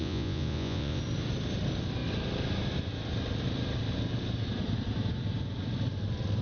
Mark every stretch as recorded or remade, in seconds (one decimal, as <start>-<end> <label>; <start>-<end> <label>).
0.0-1.0 remade; 1.0-6.4 recorded